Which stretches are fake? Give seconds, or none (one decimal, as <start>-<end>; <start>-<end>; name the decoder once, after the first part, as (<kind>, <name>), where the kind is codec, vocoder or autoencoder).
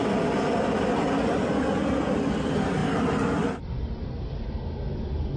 none